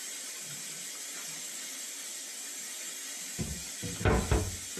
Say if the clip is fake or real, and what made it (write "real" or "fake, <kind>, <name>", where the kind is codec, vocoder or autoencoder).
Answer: real